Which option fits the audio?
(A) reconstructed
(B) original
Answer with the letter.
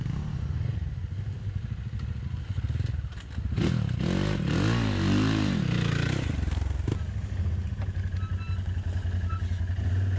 B